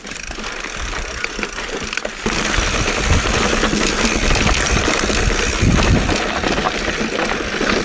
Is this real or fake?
real